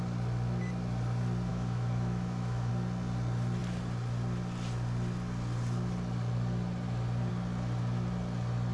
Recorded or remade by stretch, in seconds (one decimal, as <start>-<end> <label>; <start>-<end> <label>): 0.0-1.5 recorded; 1.5-2.7 remade; 2.7-8.7 recorded